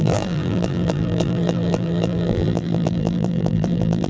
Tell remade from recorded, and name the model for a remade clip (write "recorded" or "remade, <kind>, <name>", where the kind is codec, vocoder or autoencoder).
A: remade, vocoder, BigVGAN v2